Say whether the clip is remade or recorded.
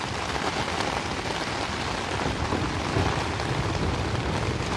remade